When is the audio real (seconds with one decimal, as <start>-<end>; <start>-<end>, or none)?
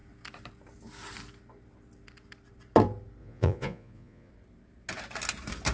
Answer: 0.0-3.2; 4.3-5.7